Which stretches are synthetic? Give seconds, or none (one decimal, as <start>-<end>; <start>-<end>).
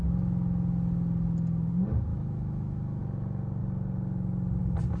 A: 2.1-3.0